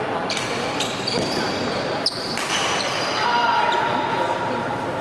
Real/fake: real